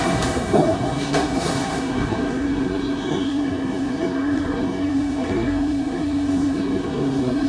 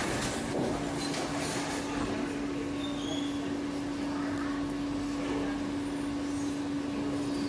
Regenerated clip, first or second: first